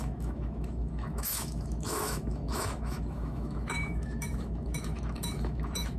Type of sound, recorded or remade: remade